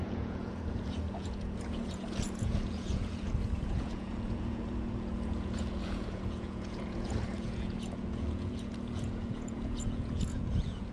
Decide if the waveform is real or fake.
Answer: fake